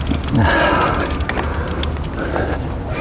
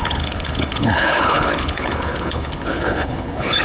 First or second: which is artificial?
second